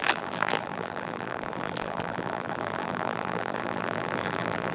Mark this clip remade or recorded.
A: remade